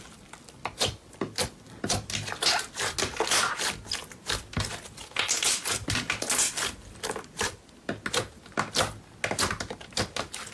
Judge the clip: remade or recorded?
recorded